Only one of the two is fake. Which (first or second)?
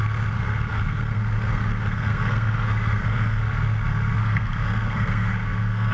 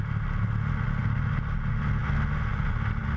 first